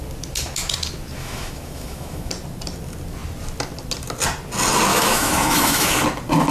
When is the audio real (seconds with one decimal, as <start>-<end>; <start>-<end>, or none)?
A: 0.0-1.2; 2.3-4.9; 5.9-6.5